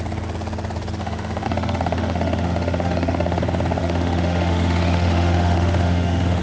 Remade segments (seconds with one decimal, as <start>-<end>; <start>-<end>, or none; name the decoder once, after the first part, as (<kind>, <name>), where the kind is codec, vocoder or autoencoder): 1.0-3.4 (autoencoder, DAC-VAE); 3.8-6.4